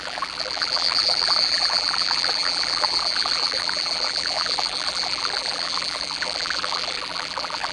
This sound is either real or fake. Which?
fake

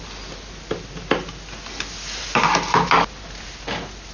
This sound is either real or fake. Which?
real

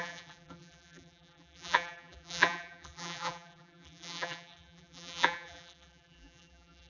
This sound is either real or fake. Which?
fake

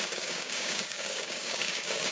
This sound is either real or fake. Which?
fake